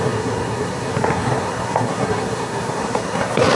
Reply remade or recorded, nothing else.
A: remade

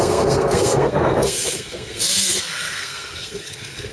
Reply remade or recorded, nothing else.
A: remade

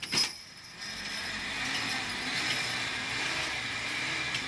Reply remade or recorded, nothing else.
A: recorded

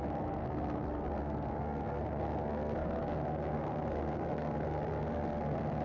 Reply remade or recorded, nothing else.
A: remade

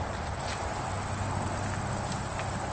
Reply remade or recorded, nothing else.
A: recorded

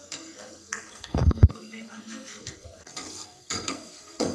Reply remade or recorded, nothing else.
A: remade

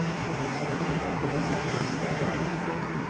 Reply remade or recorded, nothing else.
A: remade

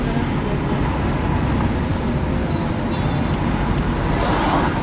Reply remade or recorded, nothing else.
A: recorded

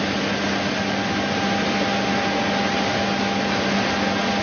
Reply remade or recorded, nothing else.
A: recorded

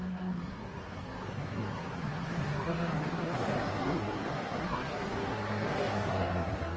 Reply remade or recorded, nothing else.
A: remade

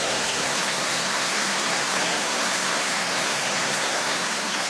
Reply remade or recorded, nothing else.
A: remade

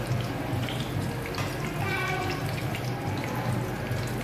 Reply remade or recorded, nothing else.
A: recorded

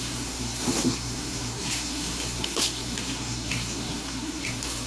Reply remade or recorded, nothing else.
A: remade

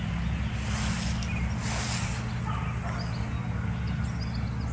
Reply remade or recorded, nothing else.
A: recorded